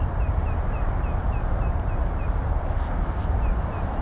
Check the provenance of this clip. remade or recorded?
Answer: recorded